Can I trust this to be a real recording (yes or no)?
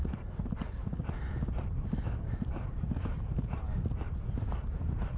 yes